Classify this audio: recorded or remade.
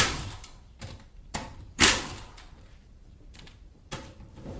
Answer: remade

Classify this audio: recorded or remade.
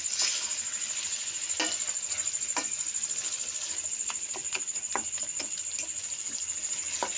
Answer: recorded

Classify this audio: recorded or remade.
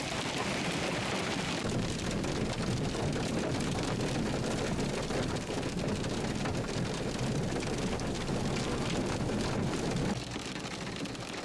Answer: remade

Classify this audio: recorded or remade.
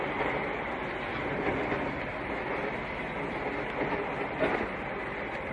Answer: recorded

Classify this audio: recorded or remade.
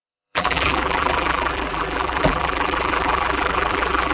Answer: remade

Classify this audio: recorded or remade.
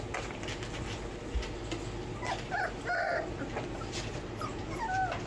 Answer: recorded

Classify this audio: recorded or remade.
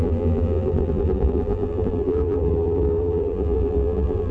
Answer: remade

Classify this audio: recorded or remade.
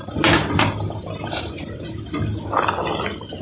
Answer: recorded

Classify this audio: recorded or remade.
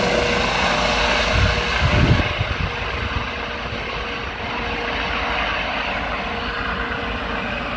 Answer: recorded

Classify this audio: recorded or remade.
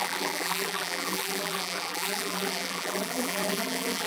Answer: remade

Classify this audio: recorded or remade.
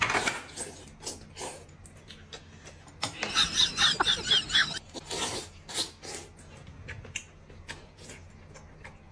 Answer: recorded